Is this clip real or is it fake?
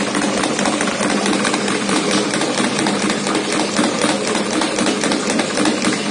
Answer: real